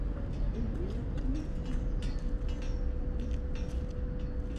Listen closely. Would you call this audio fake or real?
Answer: real